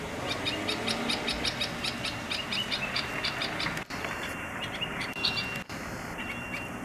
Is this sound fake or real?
real